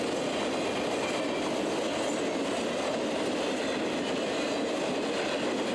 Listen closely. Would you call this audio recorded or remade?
recorded